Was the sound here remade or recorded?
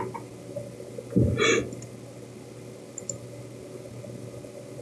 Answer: recorded